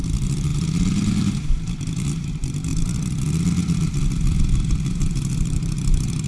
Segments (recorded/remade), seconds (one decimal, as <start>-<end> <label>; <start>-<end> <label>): 0.0-2.7 remade; 2.7-4.4 recorded; 4.4-6.3 remade